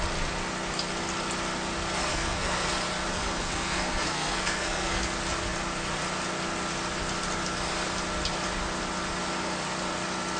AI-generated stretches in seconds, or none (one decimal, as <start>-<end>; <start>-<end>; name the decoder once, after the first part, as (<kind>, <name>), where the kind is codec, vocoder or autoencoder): 2.1-2.7 (codec, SNAC); 3.1-5.0